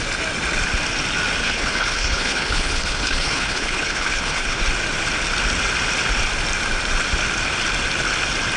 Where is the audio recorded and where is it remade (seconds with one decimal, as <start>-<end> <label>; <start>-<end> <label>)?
0.0-1.4 recorded; 1.4-4.6 remade; 4.6-8.6 recorded